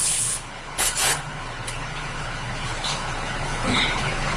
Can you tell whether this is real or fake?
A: fake